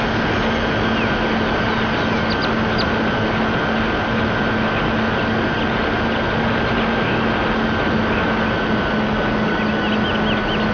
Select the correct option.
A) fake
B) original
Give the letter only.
B